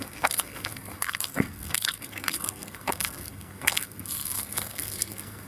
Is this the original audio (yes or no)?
no